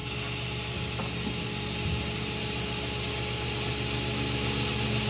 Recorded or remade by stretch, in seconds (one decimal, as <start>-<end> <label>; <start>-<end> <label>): 0.0-5.1 recorded